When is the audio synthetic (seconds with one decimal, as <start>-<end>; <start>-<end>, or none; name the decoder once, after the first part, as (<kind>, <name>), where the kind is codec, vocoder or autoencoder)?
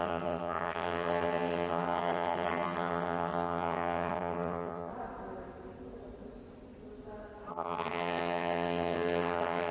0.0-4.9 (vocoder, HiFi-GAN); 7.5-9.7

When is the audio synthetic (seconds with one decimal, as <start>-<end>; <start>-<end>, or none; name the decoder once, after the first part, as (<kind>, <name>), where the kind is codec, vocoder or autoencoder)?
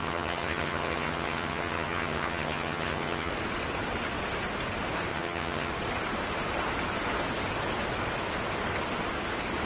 0.0-3.3 (vocoder, HiFi-GAN); 5.1-5.7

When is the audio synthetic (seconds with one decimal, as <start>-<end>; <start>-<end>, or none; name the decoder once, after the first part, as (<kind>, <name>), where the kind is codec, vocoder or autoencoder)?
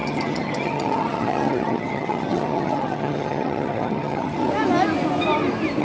0.0-4.5 (vocoder, HiFi-GAN)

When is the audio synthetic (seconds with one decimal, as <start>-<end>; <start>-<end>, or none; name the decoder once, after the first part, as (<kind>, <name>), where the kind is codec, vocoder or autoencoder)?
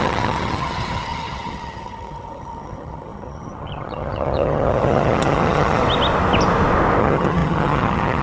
0.0-5.8 (vocoder, HiFi-GAN); 7.0-8.2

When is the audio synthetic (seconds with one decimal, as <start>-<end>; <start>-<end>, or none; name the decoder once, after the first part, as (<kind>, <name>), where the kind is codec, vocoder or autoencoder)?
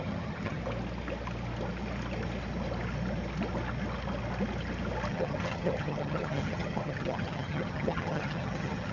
0.0-0.6 (vocoder, HiFi-GAN); 5.1-8.9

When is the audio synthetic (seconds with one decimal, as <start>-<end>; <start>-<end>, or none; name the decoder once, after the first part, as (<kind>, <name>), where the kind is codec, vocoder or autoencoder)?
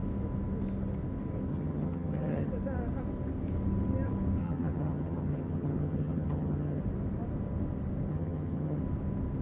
1.5-2.5 (vocoder, HiFi-GAN); 4.4-6.8; 8.1-8.8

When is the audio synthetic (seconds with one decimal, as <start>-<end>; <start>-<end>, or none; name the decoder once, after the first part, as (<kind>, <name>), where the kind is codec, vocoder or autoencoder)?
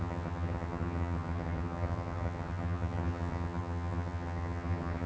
0.0-5.1 (vocoder, HiFi-GAN)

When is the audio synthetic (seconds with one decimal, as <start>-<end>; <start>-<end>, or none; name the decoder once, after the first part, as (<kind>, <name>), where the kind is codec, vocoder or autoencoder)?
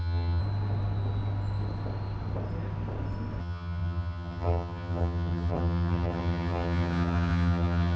0.0-0.4 (vocoder, HiFi-GAN); 3.4-8.0